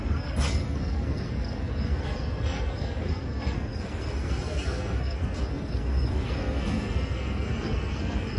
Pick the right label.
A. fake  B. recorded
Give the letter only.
A